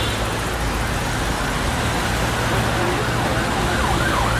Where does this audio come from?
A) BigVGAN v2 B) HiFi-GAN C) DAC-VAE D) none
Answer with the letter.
D